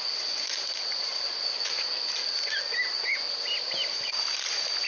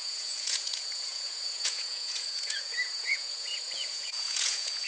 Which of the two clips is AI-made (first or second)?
second